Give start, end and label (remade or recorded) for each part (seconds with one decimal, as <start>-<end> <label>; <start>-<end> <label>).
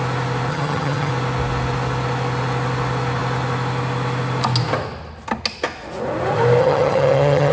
0.0-0.5 recorded; 0.5-1.1 remade; 1.1-6.6 recorded; 6.6-7.5 remade